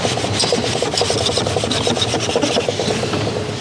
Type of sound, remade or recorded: remade